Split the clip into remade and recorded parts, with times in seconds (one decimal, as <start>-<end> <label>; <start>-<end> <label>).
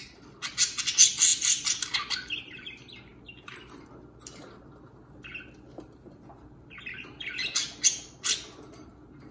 0.0-9.3 recorded